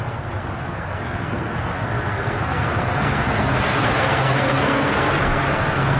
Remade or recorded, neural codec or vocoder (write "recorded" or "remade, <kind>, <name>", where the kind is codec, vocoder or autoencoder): remade, codec, SNAC